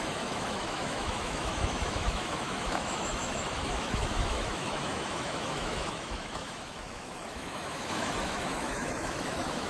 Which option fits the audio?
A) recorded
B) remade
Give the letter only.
B